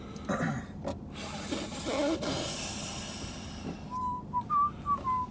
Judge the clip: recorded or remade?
recorded